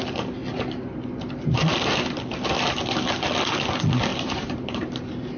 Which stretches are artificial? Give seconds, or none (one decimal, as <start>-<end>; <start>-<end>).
4.1-5.4